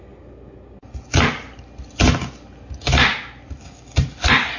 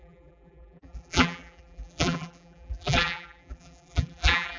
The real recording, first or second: first